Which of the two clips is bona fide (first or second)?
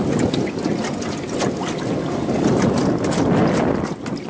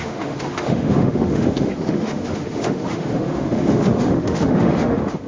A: first